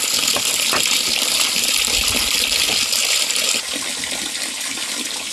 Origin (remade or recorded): recorded